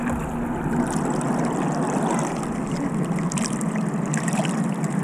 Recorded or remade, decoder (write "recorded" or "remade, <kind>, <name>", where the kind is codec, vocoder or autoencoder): recorded